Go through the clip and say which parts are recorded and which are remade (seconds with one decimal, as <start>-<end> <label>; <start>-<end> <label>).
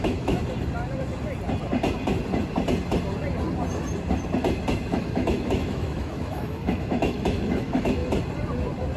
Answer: 0.0-0.4 remade; 0.4-4.9 recorded; 4.9-8.0 remade; 8.0-9.0 recorded